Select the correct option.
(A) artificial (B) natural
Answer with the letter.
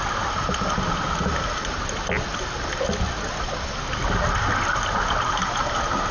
B